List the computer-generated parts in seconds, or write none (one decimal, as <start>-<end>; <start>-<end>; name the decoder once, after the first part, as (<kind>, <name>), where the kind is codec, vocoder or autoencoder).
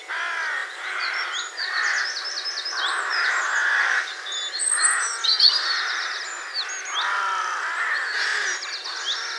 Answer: none